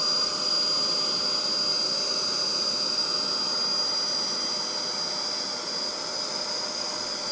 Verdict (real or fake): real